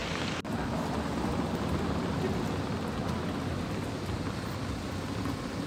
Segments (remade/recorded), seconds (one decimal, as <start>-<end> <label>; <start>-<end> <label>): 0.0-5.7 recorded